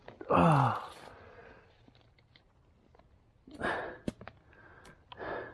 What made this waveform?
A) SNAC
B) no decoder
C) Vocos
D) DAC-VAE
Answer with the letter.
B